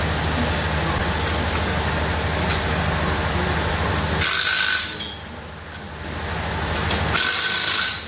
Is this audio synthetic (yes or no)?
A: no